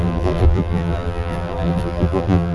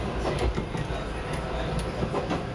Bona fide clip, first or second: second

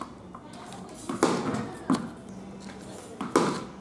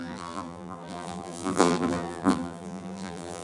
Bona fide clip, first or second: first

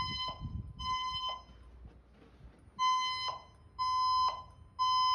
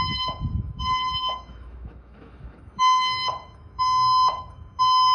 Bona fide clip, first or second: first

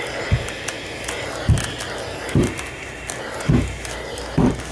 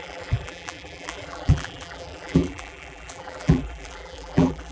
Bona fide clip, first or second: first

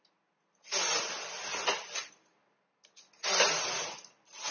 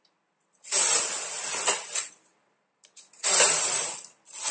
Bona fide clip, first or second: first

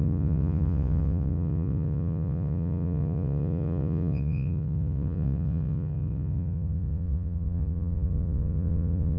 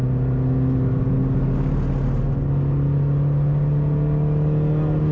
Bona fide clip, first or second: second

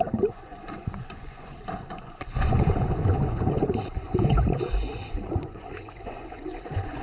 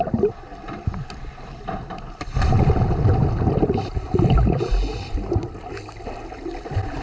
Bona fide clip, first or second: second